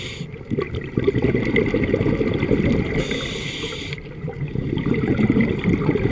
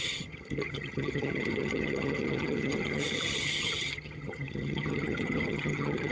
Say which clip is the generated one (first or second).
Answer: second